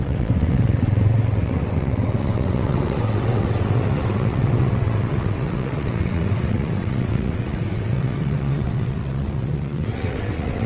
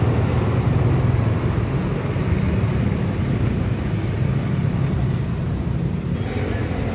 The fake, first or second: first